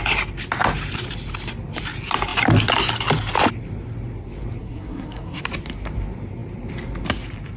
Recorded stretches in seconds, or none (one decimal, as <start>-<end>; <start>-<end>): 0.0-4.6; 5.4-7.6